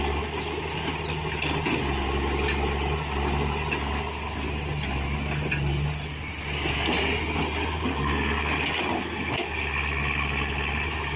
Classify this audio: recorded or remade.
recorded